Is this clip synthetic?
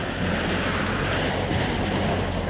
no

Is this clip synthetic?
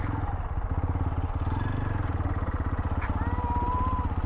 no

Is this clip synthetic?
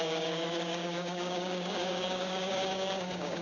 yes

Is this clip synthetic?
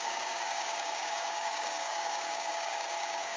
yes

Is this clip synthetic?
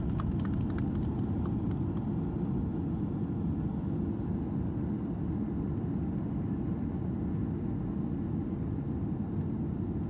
no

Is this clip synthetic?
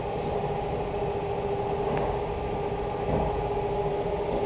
no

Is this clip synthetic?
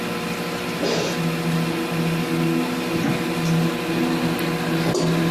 no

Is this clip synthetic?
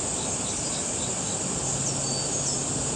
no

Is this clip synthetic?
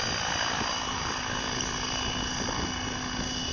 no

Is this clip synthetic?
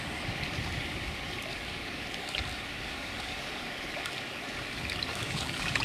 yes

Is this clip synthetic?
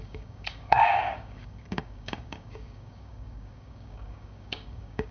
yes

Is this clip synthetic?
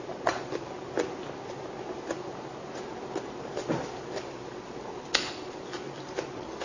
no